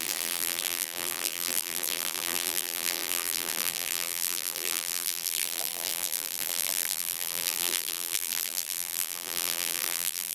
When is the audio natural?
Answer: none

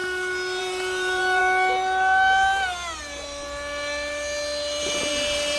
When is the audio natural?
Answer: 0.0-0.6; 1.4-4.8

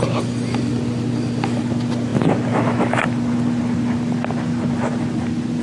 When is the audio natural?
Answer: 0.0-5.6

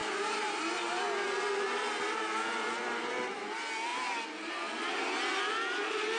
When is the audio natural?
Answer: 0.6-3.9; 4.9-6.2

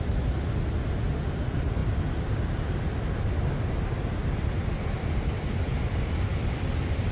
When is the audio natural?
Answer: 0.0-7.1